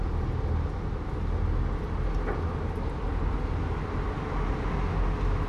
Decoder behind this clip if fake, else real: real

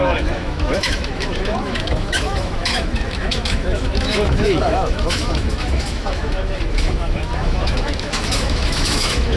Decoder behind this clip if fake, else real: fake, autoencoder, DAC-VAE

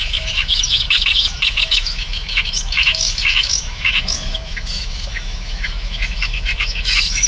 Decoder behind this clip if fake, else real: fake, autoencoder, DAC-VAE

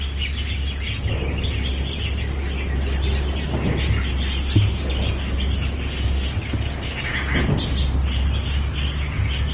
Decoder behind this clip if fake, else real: real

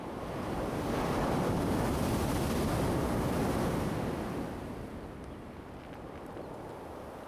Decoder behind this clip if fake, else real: real